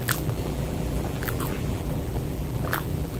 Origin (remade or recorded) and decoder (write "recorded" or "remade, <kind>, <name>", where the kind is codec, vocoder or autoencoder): remade, vocoder, BigVGAN v2